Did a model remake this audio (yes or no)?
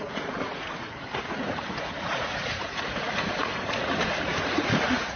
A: yes